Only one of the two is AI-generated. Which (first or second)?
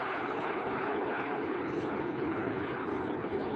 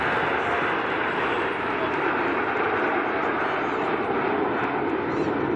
first